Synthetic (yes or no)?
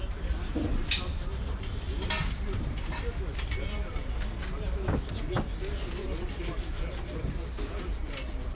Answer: no